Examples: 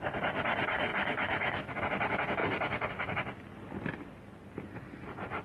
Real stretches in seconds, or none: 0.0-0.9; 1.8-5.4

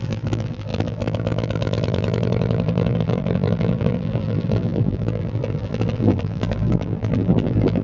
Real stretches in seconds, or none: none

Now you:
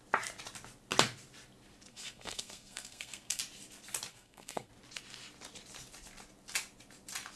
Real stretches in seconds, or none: 0.0-1.9; 3.4-4.1; 4.7-7.4

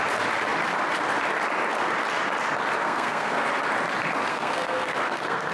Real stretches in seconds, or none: 0.0-2.8; 3.5-4.3

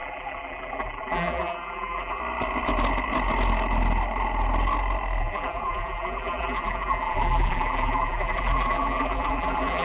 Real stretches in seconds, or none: 2.2-5.2